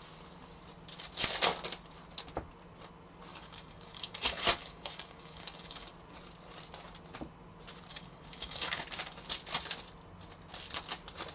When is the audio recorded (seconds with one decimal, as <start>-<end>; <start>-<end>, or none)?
0.0-3.3; 5.9-7.9; 8.8-11.3